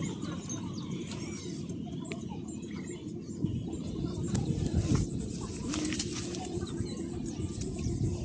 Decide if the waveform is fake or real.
real